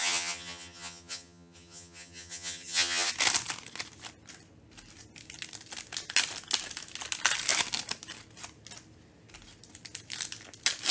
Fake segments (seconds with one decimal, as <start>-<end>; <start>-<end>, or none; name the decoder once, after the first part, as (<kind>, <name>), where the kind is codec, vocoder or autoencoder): 0.0-3.1 (vocoder, HiFi-GAN)